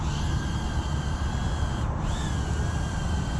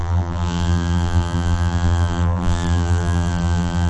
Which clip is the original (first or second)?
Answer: first